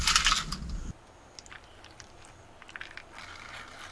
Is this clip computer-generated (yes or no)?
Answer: no